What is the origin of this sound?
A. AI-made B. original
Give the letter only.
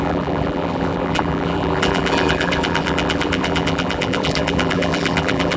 A